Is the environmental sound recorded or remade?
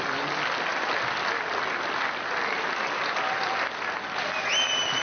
recorded